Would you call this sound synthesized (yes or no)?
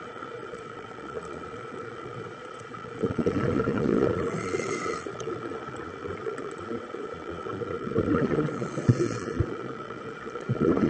yes